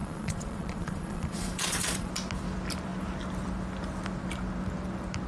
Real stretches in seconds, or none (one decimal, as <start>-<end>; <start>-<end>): 2.1-5.3